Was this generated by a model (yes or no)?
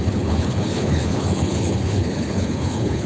yes